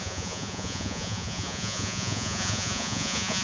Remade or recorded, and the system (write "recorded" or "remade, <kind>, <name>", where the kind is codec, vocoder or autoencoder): remade, vocoder, Vocos